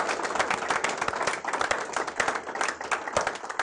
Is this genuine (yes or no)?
yes